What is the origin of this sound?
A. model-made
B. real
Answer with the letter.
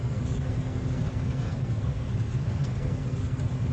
A